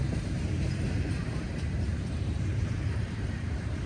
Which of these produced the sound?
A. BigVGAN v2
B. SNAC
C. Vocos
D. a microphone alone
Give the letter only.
A